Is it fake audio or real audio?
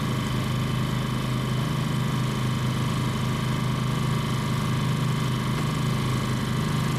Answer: real